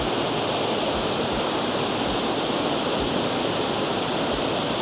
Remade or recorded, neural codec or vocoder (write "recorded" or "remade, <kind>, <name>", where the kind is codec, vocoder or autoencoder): recorded